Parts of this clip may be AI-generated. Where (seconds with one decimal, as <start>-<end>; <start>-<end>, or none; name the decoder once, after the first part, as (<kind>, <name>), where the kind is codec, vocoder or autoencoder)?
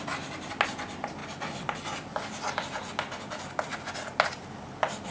none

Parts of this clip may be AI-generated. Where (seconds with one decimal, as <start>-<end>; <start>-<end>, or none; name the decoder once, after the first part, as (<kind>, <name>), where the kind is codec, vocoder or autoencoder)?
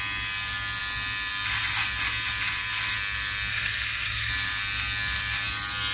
3.5-4.3 (codec, SNAC)